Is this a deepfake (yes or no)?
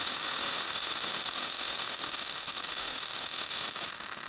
yes